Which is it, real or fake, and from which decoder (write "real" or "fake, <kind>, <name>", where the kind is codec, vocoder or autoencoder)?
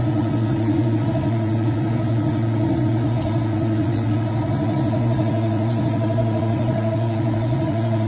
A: fake, vocoder, Vocos